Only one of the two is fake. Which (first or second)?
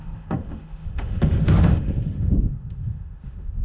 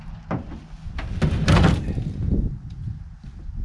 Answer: first